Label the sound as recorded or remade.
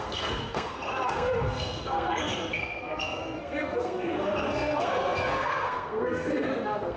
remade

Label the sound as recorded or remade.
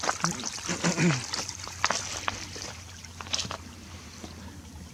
recorded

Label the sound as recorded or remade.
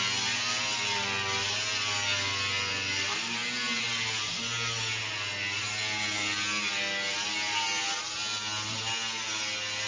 recorded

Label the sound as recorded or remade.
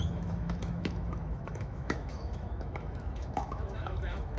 remade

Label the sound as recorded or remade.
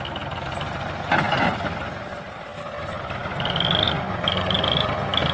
recorded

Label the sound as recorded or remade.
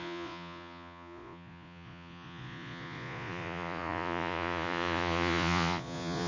remade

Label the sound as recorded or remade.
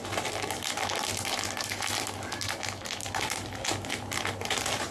recorded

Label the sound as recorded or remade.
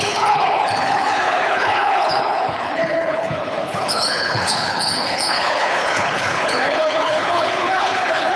remade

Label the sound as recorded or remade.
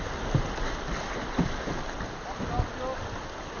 recorded